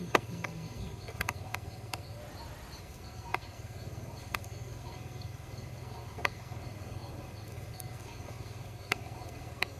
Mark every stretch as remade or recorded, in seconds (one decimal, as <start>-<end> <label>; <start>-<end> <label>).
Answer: 0.0-2.2 remade; 2.2-2.8 recorded; 2.8-9.8 remade